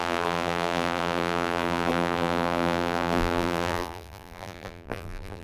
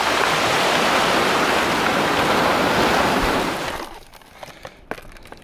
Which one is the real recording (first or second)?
second